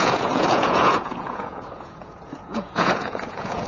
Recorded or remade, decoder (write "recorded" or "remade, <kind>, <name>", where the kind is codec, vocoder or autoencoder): remade, vocoder, Vocos